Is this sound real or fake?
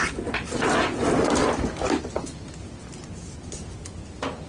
real